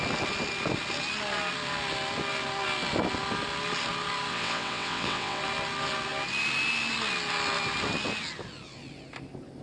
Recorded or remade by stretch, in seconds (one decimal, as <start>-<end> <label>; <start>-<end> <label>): 0.0-4.3 recorded; 4.3-5.4 remade; 5.4-9.6 recorded